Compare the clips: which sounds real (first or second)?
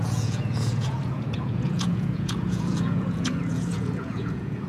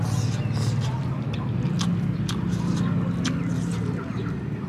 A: second